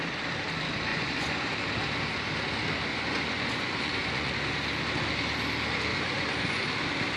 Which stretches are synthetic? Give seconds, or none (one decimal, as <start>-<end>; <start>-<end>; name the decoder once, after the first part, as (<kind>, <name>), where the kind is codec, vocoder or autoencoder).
0.9-1.5 (vocoder, Vocos); 2.9-4.3; 5.9-6.6